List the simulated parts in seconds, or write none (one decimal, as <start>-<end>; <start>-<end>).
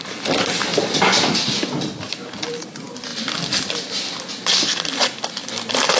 none